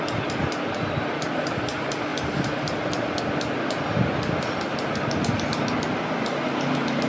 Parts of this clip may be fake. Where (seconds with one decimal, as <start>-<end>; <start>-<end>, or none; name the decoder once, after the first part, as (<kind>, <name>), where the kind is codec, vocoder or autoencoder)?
none